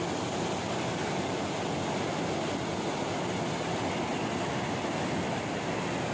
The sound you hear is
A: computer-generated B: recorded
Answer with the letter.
B